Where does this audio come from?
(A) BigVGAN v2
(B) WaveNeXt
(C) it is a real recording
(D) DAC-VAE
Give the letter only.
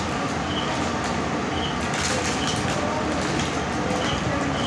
C